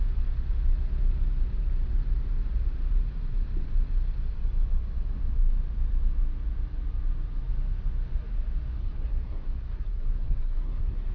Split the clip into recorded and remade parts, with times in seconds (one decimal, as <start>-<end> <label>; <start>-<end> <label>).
0.0-8.8 recorded; 8.8-11.1 remade